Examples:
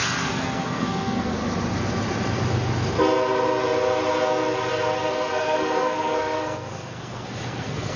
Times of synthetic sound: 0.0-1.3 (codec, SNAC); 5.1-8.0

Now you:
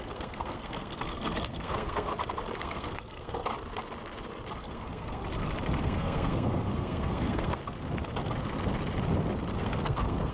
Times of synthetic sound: 0.0-2.1 (codec, SNAC); 2.6-3.4; 4.6-5.2; 5.8-7.6; 9.6-10.3

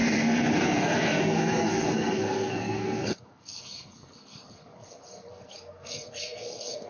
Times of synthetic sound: 0.0-6.9 (codec, SNAC)

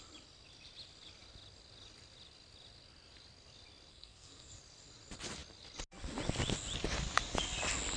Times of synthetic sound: 3.9-4.6 (codec, SNAC)

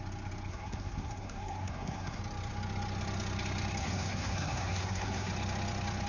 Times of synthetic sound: 0.5-2.2 (codec, SNAC); 3.8-5.3